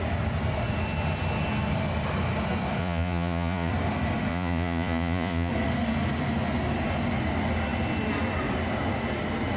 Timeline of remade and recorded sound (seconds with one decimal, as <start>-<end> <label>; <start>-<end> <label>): 0.0-2.8 recorded; 2.8-3.7 remade; 3.7-4.3 recorded; 4.3-5.5 remade; 5.5-9.6 recorded